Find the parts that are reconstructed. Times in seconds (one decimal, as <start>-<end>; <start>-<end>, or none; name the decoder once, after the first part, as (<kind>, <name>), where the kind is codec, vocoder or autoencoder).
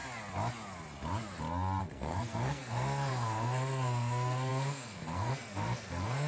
1.8-6.3 (codec, SNAC)